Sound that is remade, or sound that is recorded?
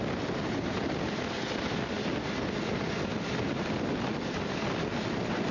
recorded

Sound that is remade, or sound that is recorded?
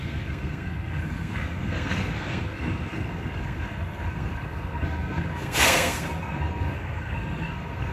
remade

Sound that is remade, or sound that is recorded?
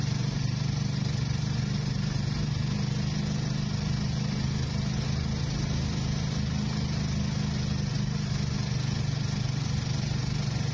recorded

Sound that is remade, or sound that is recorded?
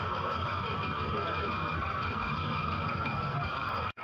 remade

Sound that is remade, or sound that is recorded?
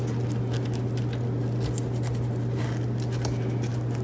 recorded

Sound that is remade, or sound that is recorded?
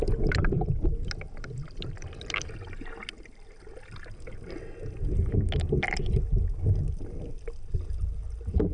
recorded